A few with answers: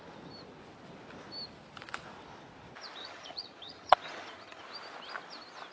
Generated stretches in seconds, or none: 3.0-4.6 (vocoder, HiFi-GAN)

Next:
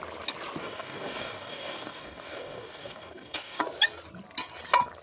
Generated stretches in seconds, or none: 0.6-3.6 (codec, DAC)

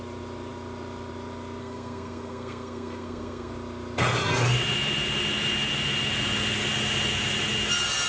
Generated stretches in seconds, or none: 1.6-3.5 (codec, SNAC)

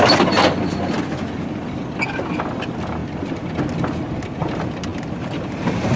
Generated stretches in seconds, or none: 4.9-6.0 (vocoder, BigVGAN v2)

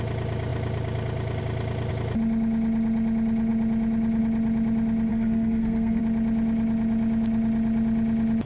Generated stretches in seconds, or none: 5.1-6.0 (codec, SNAC)